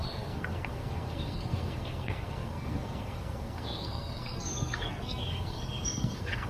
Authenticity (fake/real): fake